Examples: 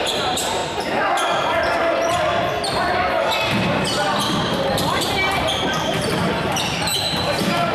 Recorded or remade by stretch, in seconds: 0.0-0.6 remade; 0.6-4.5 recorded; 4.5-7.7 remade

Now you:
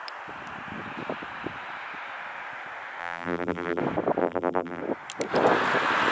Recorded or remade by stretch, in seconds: 0.0-3.0 recorded; 3.0-3.8 remade; 3.8-4.2 recorded; 4.2-4.8 remade; 4.8-6.1 recorded

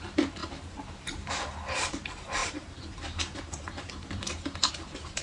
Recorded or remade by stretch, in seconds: 0.0-5.2 remade

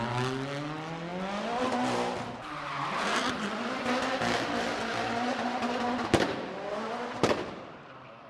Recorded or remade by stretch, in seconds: 0.0-8.3 recorded